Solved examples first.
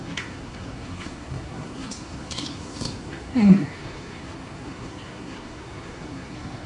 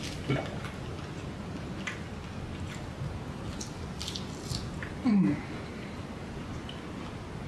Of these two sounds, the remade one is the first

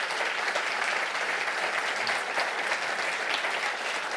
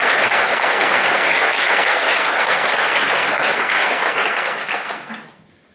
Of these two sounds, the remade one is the second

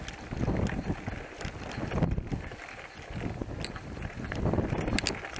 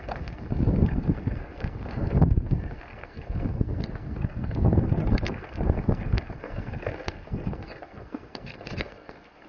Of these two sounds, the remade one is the second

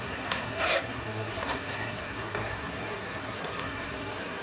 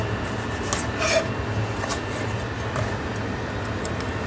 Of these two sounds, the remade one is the first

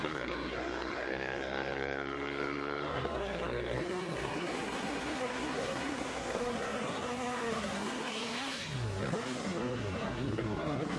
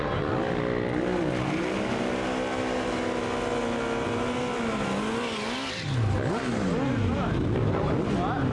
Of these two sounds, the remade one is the first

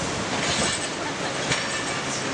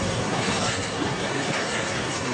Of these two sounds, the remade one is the second